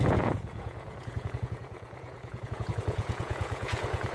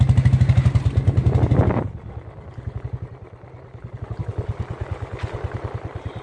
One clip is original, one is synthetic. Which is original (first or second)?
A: second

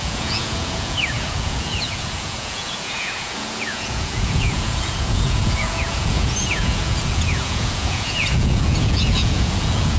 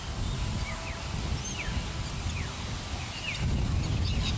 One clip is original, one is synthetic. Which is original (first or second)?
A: second